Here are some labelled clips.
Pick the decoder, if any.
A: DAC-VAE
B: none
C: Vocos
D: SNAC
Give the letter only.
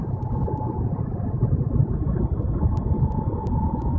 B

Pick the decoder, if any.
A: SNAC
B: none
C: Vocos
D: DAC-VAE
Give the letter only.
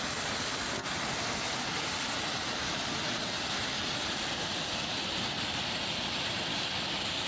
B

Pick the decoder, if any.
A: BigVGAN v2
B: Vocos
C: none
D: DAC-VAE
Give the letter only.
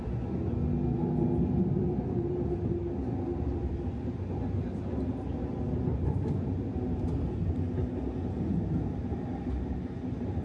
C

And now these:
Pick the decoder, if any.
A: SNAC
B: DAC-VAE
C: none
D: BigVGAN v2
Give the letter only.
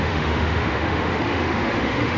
B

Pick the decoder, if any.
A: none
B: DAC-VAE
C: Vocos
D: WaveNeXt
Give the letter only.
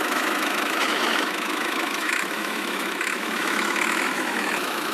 B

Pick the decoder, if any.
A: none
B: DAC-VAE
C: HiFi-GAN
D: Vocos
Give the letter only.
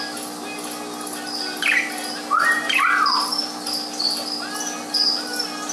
A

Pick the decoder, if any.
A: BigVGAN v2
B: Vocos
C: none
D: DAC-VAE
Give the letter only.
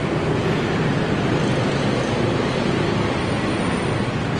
C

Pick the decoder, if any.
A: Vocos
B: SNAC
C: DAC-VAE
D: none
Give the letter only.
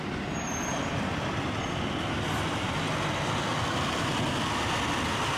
D